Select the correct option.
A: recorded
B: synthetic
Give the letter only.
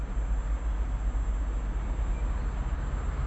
A